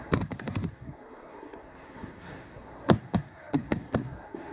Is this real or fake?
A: fake